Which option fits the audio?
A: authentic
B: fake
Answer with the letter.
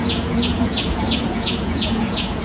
B